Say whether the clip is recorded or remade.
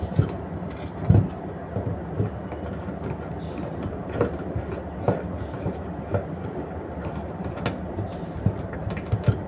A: recorded